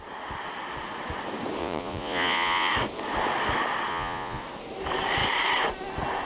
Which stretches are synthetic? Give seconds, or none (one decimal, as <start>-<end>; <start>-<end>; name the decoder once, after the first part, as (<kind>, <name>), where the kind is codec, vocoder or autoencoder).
1.6-2.7 (vocoder, Vocos); 3.9-4.4

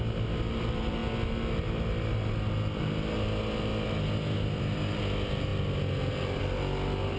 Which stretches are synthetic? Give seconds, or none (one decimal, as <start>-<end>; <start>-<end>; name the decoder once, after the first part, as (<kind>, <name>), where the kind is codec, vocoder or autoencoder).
none

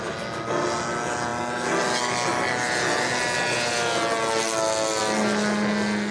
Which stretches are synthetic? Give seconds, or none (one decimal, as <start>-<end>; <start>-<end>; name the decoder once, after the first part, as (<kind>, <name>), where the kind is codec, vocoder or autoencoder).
none

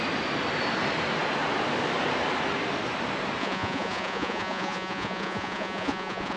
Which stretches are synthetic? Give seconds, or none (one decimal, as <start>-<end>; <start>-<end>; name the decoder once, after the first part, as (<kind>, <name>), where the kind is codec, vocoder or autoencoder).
3.4-6.4 (vocoder, Vocos)

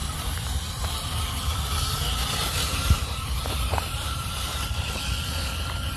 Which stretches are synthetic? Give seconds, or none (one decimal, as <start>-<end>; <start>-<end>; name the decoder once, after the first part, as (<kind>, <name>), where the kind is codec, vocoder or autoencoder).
0.0-0.8 (vocoder, BigVGAN v2); 2.2-4.6

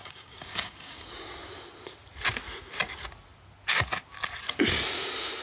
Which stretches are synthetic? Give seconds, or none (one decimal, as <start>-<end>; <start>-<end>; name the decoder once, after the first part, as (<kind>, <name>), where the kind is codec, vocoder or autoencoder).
0.0-1.1 (codec, DAC)